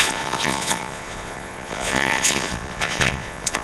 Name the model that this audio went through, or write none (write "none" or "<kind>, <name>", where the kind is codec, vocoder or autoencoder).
vocoder, Vocos